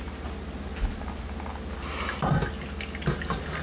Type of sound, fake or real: real